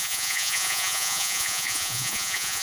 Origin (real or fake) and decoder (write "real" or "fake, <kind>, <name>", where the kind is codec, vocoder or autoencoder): fake, vocoder, Vocos